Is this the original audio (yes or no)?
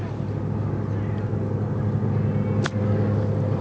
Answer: yes